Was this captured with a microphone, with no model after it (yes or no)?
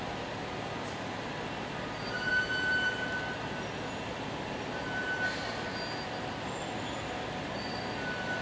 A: yes